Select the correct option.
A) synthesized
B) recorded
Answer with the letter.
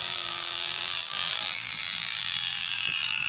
A